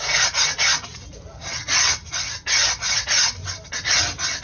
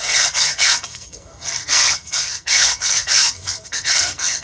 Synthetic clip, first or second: second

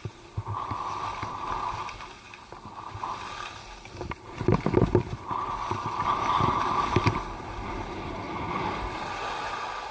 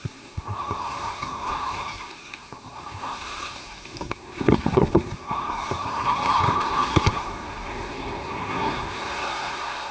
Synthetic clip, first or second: second